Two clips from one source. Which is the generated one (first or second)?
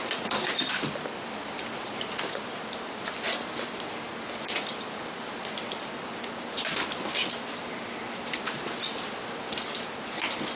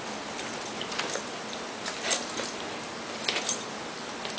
first